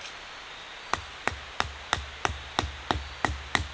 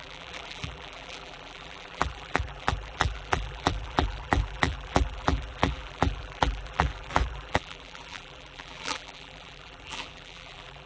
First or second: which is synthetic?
second